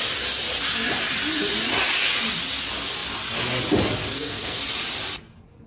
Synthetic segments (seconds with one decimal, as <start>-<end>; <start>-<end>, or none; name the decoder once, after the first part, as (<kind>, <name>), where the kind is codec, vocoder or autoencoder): 4.0-4.6 (codec, SNAC)